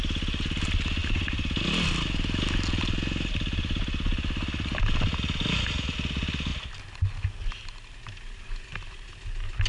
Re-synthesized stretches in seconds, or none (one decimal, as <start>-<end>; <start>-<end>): none

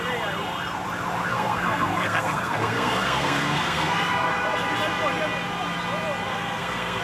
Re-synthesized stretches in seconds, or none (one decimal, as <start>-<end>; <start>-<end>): 1.3-4.3; 6.3-7.0

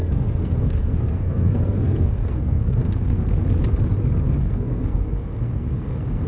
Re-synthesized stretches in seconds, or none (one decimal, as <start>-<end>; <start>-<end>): 0.0-3.4; 4.4-6.3

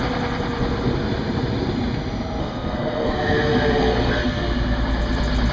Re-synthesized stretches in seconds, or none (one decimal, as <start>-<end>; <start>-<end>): 2.4-3.1; 3.8-4.4

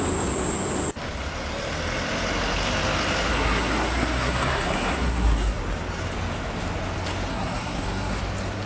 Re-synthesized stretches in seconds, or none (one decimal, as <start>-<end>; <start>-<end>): 3.3-5.6; 7.3-8.2

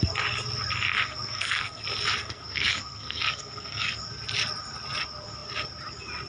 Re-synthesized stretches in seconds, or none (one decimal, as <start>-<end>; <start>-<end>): 0.9-1.8; 2.2-4.0